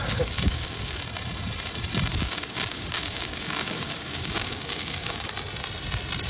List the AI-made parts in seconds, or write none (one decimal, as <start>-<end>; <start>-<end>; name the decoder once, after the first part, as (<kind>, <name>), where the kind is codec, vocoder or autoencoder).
0.0-1.0 (codec, DAC); 2.1-5.3

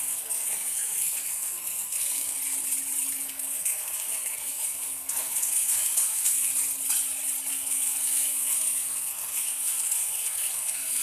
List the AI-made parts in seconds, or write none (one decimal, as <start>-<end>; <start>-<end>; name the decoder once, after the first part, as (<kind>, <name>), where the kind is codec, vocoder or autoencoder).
0.0-2.4 (codec, SNAC); 3.2-6.5; 7.5-11.0

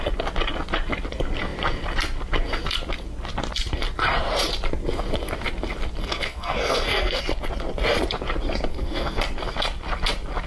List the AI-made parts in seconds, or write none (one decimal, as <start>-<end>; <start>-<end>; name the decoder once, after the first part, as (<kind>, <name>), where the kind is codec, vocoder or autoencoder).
6.0-7.2 (codec, SNAC); 8.7-9.2

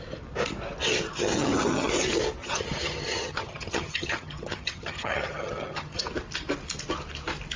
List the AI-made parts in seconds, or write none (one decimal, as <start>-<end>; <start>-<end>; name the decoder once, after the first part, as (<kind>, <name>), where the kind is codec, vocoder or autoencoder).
1.1-1.9 (vocoder, HiFi-GAN); 2.4-6.0

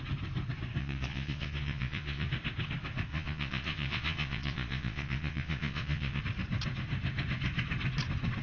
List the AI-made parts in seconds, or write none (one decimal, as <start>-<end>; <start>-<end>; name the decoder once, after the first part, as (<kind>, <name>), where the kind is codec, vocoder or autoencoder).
0.8-2.3 (vocoder, Vocos); 3.1-6.2